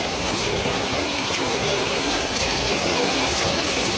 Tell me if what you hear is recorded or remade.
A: remade